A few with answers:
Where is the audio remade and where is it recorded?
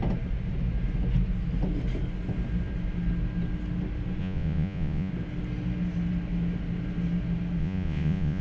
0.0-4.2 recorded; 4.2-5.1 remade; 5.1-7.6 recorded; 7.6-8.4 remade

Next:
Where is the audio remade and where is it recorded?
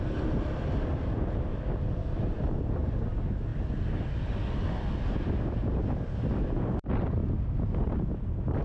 0.0-8.6 recorded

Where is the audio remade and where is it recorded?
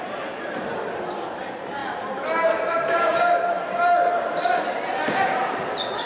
0.0-6.1 recorded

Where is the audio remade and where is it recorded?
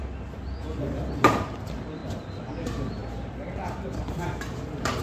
0.0-4.0 recorded; 4.0-5.0 remade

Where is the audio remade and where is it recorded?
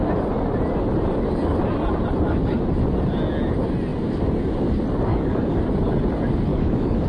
0.0-5.1 recorded; 5.1-5.6 remade; 5.6-6.5 recorded; 6.5-7.1 remade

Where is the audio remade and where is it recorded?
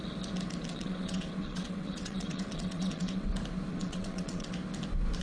0.0-0.7 recorded; 0.7-3.3 remade; 3.3-3.7 recorded; 3.7-4.5 remade; 4.5-5.2 recorded